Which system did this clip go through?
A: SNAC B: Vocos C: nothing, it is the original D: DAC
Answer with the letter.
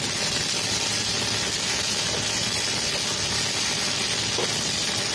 C